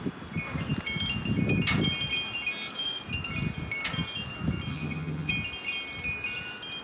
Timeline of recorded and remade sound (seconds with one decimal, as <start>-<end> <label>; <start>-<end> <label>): 0.0-4.7 recorded; 4.7-5.3 remade; 5.3-6.8 recorded